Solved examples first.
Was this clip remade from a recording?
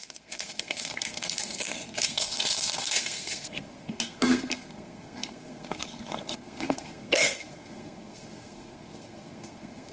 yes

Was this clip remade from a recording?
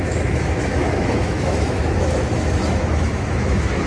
yes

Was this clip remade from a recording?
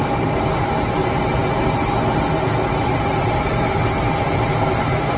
no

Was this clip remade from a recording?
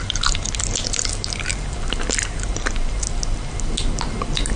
no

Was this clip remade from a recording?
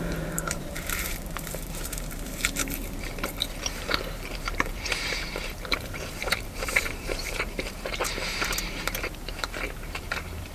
yes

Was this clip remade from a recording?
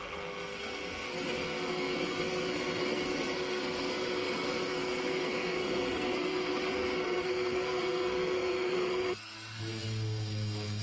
yes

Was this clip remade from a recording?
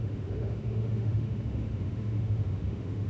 yes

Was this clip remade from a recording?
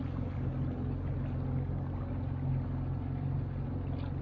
no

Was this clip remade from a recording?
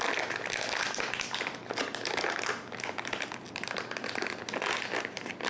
no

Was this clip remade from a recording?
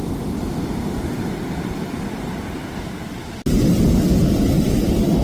no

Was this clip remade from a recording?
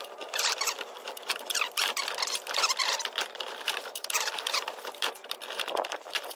yes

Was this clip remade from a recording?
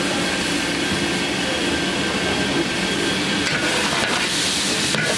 no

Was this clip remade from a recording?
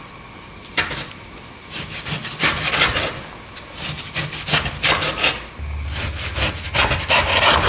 no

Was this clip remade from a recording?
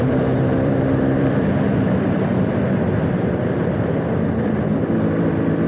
yes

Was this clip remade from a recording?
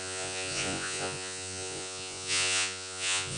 yes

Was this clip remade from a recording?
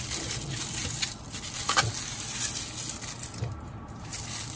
no